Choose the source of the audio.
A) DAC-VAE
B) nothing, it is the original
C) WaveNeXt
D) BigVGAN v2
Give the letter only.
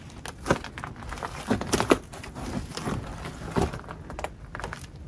B